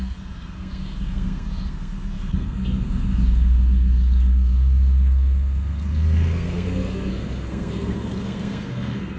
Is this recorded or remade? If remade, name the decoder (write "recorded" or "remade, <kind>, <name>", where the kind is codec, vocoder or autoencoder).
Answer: remade, codec, SNAC